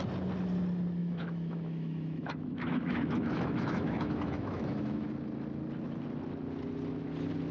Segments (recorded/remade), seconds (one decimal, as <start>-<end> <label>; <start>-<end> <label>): 0.0-1.0 recorded; 1.0-5.1 remade; 5.1-7.5 recorded

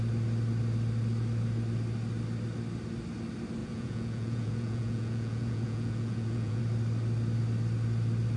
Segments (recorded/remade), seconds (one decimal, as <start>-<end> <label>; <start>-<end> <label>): 0.0-3.6 recorded; 3.6-6.6 remade; 6.6-8.4 recorded

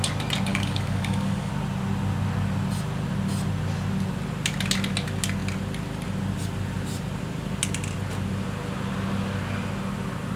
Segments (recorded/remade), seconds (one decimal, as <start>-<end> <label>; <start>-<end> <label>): 0.0-0.5 recorded; 0.5-1.5 remade; 1.5-10.4 recorded

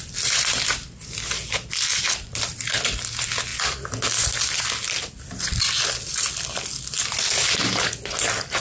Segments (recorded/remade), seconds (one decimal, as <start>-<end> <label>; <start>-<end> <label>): 0.0-8.6 recorded

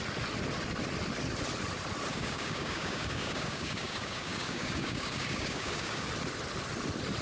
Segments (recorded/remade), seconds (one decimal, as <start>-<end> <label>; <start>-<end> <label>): 0.0-2.1 recorded; 2.1-6.1 remade; 6.1-7.2 recorded